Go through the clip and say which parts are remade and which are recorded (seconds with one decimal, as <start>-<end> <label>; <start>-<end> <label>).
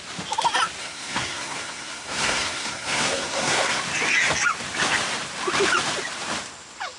0.0-0.8 recorded; 0.8-3.8 remade; 3.8-7.0 recorded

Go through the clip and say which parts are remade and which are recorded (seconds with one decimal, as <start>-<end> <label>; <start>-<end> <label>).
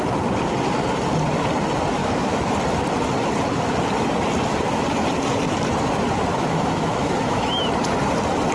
0.0-2.0 recorded; 2.0-2.5 remade; 2.5-6.3 recorded; 6.3-7.6 remade; 7.6-8.5 recorded